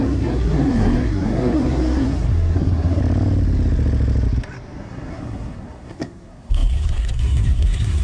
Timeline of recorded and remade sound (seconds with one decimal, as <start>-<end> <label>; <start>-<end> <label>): 0.0-3.0 remade; 3.0-4.8 recorded; 4.8-8.0 remade